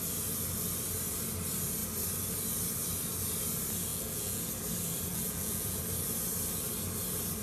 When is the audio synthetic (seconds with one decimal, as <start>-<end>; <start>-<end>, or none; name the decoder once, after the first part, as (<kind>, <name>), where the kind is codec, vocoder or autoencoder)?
3.9-4.4 (vocoder, Vocos); 5.1-5.8